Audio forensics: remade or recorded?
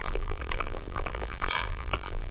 remade